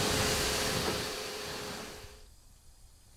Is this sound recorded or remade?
remade